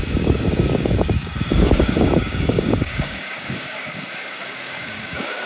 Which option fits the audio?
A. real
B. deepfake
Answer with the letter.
B